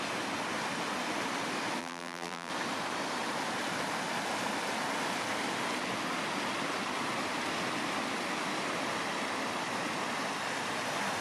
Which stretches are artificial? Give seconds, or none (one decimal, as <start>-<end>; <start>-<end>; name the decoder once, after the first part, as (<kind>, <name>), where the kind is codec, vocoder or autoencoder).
1.8-2.5 (vocoder, BigVGAN v2)

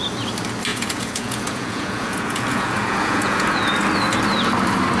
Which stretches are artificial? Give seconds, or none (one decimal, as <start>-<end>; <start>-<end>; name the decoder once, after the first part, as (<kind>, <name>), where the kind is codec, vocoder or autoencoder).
0.7-3.7 (vocoder, Vocos)

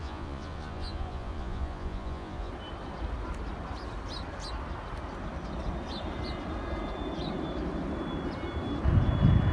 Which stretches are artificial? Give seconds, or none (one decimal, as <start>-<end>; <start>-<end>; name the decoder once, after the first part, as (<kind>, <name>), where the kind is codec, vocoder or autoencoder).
0.0-2.5 (vocoder, Vocos)

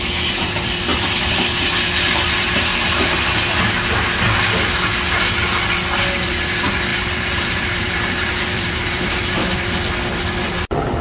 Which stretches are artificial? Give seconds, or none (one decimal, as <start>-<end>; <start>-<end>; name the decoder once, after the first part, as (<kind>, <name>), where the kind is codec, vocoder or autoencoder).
2.7-3.3 (vocoder, BigVGAN v2); 6.9-9.7

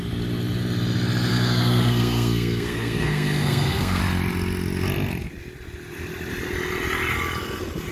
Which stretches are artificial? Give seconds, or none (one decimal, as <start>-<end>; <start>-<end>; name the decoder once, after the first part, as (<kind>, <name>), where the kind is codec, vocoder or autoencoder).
1.3-4.0 (codec, SNAC)

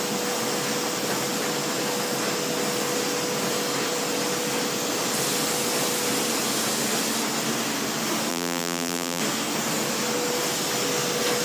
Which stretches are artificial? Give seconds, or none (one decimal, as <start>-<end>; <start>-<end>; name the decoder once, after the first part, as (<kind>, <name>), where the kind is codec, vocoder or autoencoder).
8.3-9.2 (vocoder, BigVGAN v2)

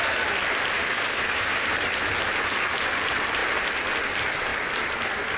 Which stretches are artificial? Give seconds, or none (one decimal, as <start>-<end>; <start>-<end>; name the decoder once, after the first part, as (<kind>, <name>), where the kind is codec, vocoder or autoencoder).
0.8-1.6 (codec, DAC)